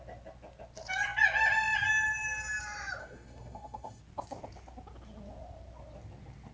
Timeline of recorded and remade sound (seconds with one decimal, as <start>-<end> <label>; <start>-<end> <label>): 0.0-3.0 recorded; 3.0-4.0 remade; 4.0-6.5 recorded